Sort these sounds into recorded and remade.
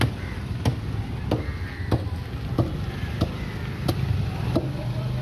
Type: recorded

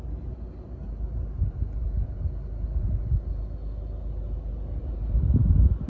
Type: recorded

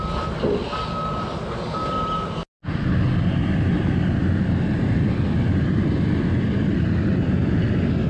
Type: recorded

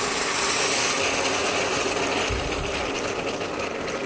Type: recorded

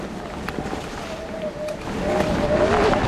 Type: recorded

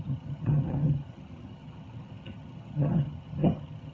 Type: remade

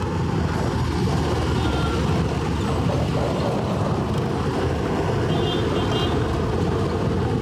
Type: recorded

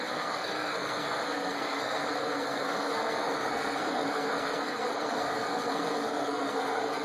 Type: remade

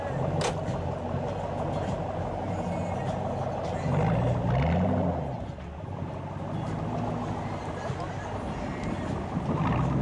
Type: recorded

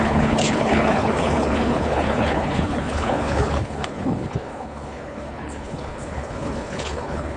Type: remade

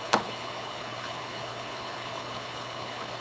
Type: remade